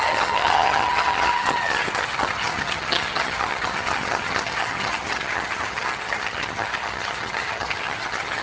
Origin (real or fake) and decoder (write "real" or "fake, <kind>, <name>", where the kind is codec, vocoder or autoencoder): fake, vocoder, HiFi-GAN